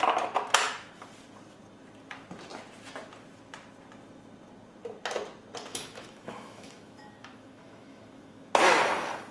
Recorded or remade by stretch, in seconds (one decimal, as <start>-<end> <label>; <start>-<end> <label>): 0.0-5.7 recorded; 5.7-8.5 remade; 8.5-9.3 recorded